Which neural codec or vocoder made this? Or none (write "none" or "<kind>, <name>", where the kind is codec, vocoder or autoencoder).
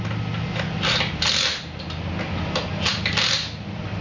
none